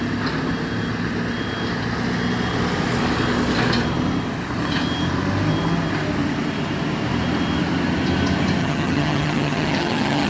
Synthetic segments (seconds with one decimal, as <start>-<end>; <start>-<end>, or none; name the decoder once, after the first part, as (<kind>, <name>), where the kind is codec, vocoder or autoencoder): 8.6-10.3 (vocoder, HiFi-GAN)